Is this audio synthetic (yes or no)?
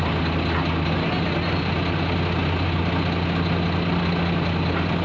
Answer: no